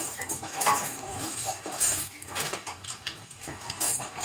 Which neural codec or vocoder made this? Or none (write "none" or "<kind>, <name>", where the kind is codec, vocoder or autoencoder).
codec, DAC